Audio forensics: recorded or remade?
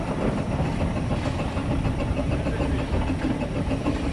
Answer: recorded